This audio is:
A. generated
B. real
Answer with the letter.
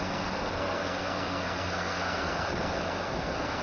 A